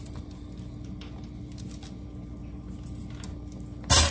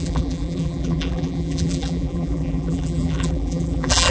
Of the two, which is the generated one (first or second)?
second